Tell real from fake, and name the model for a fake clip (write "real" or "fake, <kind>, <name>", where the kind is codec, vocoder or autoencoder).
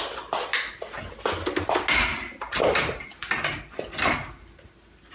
real